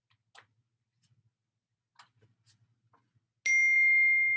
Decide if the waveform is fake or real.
real